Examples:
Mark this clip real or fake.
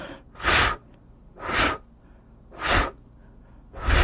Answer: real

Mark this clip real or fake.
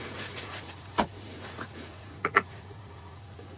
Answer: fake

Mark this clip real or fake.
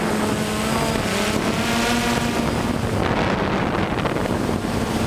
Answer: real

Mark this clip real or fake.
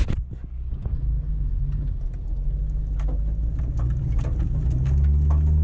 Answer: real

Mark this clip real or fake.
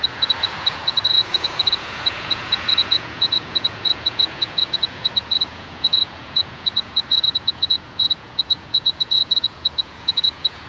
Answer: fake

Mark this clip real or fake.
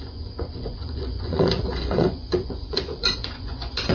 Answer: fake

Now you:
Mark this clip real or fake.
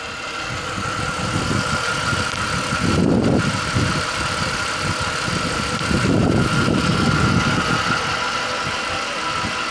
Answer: real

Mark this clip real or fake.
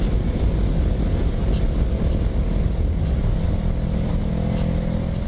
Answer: real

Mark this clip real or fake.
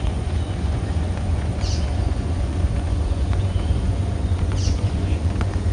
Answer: fake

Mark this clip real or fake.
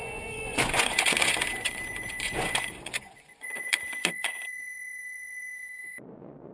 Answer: fake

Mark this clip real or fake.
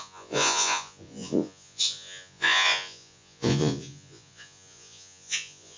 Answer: fake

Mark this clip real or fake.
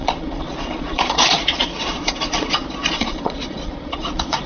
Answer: fake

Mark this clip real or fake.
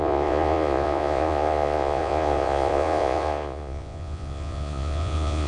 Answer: fake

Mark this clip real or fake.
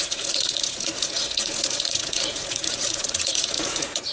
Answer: fake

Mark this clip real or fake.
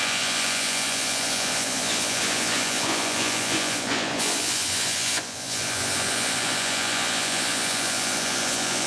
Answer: fake